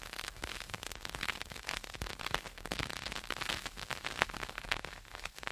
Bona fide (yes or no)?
no